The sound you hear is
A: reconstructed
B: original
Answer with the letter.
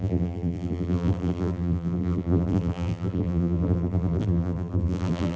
A